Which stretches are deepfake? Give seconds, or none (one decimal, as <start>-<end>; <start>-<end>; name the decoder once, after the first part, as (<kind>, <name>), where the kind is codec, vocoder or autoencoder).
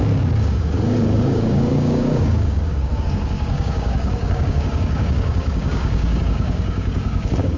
0.0-7.6 (codec, DAC)